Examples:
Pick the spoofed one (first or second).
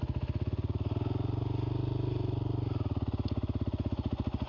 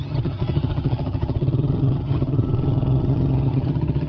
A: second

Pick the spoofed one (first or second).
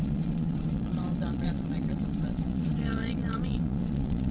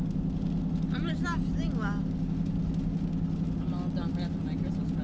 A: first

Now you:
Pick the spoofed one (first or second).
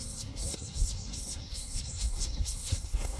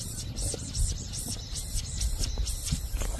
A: first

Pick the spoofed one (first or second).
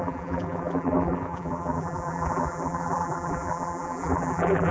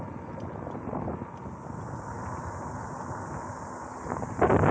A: first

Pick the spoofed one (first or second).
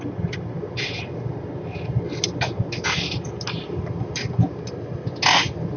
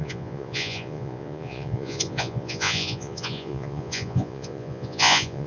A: second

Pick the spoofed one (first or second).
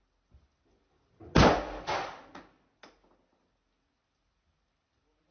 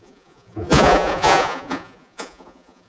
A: second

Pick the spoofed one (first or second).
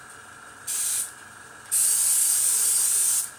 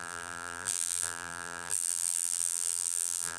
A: second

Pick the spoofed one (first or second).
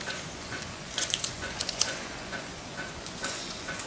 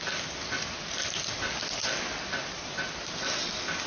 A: first